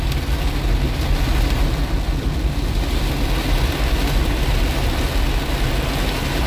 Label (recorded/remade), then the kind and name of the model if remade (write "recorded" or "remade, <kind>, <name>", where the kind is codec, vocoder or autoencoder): recorded